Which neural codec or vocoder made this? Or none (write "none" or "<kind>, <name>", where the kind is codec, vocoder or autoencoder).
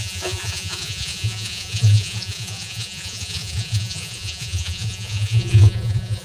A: vocoder, Vocos